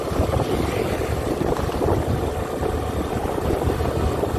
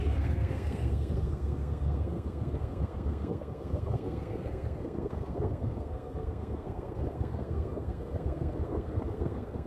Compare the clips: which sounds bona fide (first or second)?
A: first